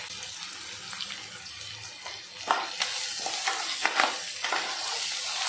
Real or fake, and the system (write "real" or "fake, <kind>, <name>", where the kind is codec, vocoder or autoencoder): real